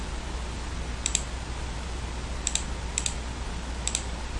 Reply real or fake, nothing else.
real